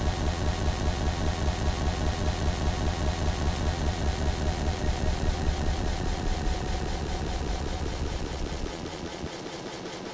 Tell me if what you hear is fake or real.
fake